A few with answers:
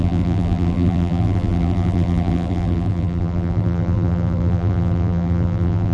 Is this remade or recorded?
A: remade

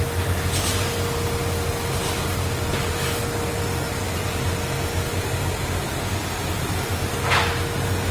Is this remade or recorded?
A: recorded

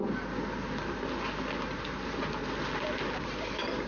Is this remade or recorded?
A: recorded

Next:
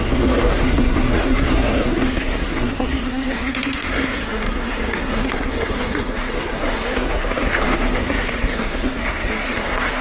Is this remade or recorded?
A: remade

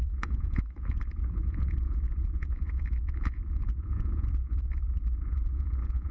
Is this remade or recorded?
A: remade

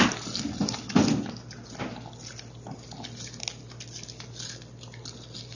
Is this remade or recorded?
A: recorded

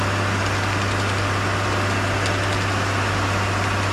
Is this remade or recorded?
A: recorded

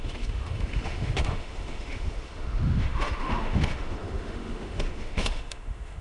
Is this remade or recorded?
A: remade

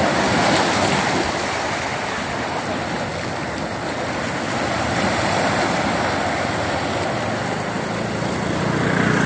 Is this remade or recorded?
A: recorded